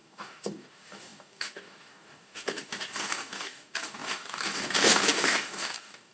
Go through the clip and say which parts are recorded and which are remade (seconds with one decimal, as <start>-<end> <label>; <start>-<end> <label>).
0.0-6.1 remade

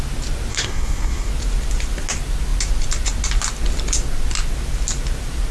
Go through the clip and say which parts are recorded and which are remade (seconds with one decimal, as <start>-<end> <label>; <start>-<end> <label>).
0.0-0.5 recorded; 0.5-1.3 remade; 1.3-5.5 recorded

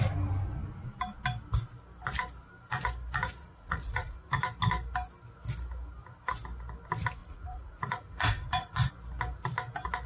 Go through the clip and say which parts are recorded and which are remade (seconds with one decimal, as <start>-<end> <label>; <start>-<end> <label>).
0.0-3.4 recorded; 3.4-4.4 remade; 4.4-7.2 recorded; 7.2-8.9 remade; 8.9-10.1 recorded

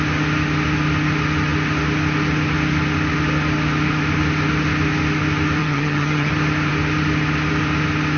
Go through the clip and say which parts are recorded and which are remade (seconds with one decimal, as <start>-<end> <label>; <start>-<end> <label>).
0.0-5.6 recorded; 5.6-6.3 remade; 6.3-8.2 recorded

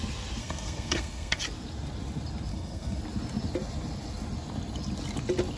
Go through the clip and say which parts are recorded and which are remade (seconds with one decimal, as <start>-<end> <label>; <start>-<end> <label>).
0.0-0.4 recorded; 0.4-1.4 remade; 1.4-2.5 recorded; 2.5-3.0 remade; 3.0-5.6 recorded

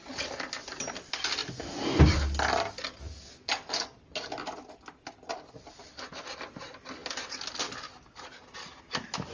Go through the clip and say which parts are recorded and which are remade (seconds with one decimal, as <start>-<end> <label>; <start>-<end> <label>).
0.0-9.3 recorded